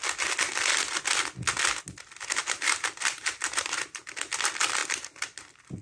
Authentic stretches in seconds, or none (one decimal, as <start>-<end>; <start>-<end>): 0.0-2.4; 4.0-5.8